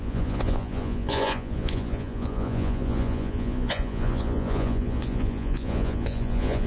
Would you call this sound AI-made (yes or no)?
yes